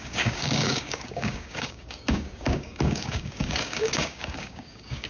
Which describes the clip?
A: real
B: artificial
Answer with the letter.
B